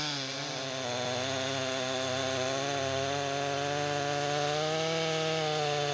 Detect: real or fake real